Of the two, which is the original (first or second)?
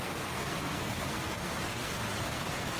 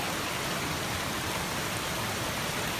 second